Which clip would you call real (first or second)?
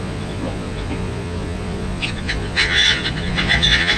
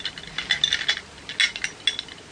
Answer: second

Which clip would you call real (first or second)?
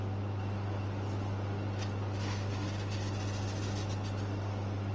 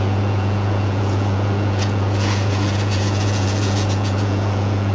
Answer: first